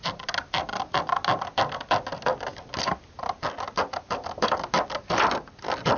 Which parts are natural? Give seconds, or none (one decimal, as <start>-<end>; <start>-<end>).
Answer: 0.0-6.0